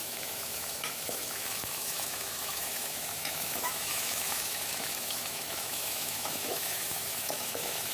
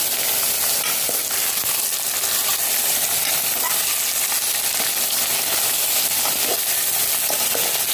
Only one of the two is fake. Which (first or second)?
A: first